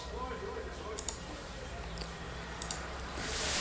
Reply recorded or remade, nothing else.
remade